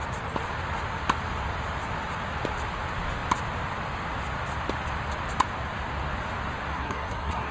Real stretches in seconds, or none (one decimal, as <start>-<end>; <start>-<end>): 0.0-6.7